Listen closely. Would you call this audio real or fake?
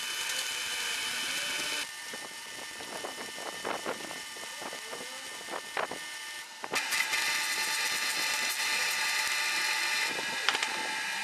real